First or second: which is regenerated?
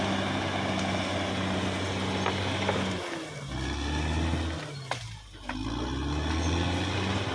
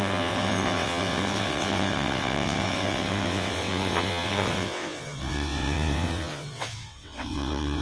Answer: second